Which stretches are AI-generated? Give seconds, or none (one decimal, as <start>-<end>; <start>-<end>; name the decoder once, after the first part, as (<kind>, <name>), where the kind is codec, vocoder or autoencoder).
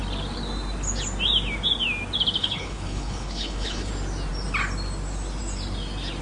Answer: 2.4-3.9 (codec, HILCodec)